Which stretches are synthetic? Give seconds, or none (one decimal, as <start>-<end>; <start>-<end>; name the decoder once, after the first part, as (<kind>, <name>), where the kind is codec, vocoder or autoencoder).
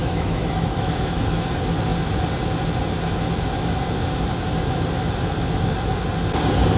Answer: 0.0-1.5 (autoencoder, DAC-VAE)